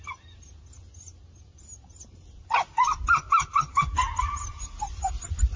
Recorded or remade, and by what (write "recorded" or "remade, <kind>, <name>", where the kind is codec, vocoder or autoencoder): recorded